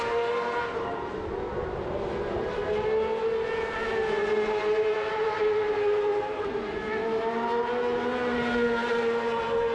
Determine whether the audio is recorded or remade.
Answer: recorded